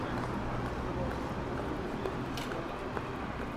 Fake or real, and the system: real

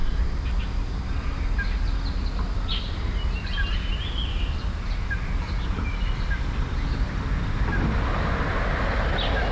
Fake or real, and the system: real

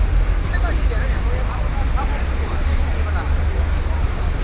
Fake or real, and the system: real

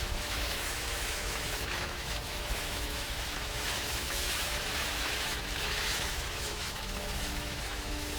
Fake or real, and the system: fake, autoencoder, DAC-VAE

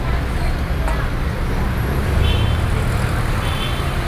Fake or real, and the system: real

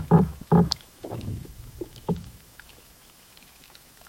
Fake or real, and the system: fake, autoencoder, DAC-VAE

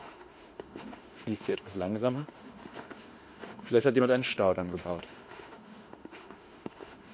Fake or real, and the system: fake, autoencoder, DAC-VAE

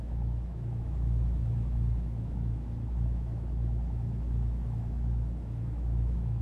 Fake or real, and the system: fake, autoencoder, DAC-VAE